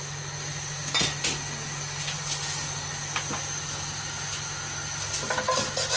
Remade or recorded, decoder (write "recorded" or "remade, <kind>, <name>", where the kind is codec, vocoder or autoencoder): recorded